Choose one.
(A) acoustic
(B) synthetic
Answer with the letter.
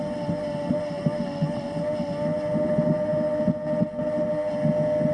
A